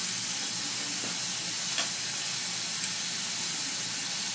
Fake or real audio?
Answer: real